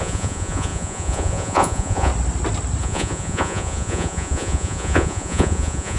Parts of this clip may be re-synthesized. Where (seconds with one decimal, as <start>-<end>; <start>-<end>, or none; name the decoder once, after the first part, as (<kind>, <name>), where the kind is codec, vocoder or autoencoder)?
0.0-2.1 (vocoder, Vocos); 2.8-6.0